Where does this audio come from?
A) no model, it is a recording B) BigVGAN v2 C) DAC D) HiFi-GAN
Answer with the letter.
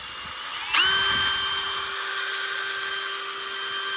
A